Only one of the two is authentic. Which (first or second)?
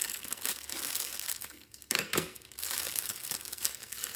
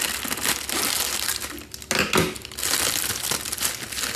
second